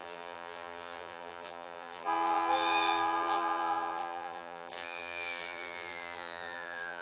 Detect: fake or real fake